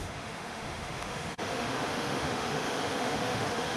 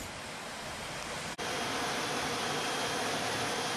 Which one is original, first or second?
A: second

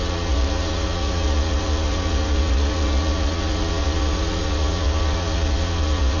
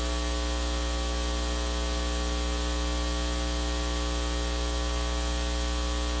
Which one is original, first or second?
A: second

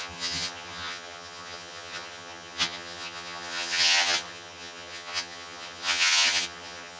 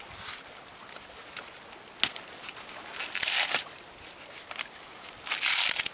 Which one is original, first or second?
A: second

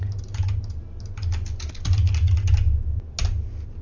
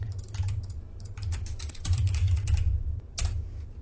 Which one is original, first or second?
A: first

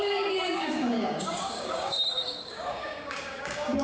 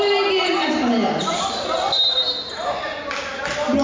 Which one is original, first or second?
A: second